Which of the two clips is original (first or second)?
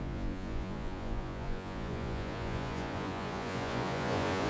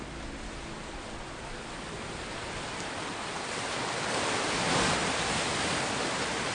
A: second